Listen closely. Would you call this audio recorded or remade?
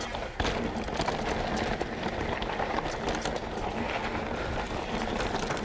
recorded